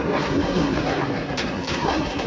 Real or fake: fake